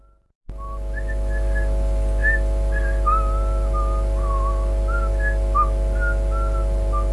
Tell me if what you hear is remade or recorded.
recorded